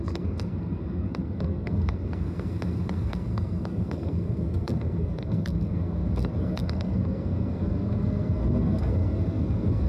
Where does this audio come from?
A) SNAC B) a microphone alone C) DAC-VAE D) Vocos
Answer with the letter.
A